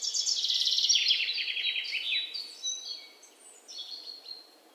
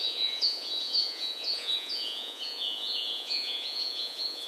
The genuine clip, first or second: first